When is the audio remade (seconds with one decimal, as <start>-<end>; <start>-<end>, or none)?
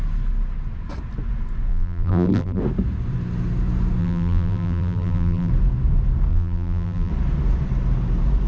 1.7-2.6; 4.0-5.5; 6.3-7.1